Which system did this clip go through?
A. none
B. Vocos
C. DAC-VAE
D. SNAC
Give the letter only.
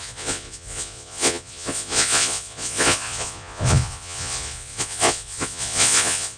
B